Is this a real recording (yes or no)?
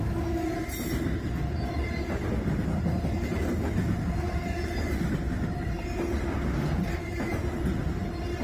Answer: yes